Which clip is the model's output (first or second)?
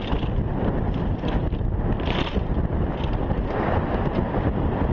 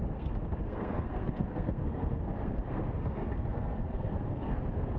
second